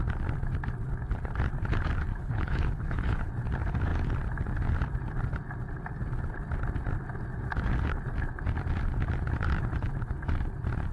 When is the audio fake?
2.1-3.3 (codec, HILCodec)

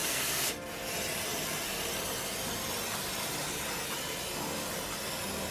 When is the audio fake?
0.0-0.5 (codec, SNAC)